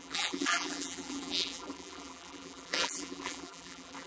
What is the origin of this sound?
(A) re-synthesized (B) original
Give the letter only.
A